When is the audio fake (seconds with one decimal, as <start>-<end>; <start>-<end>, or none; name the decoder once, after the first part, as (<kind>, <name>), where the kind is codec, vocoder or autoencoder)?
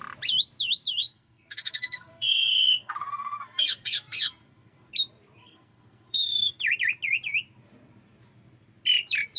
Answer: 1.0-4.9 (codec, SNAC); 5.4-6.6